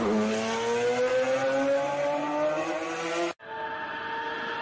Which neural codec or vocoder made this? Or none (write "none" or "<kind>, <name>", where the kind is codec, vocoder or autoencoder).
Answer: none